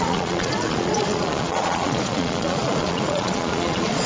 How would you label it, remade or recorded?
remade